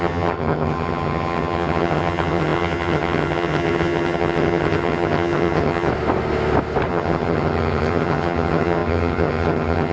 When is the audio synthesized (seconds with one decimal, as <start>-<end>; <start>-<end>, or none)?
0.0-5.9; 6.9-9.9